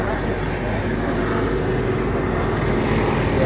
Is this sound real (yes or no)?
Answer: yes